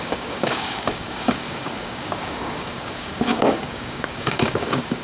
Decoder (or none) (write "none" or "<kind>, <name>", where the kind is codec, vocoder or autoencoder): codec, DAC